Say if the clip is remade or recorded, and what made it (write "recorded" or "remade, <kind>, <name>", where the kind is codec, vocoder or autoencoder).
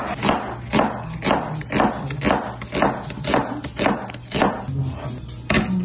recorded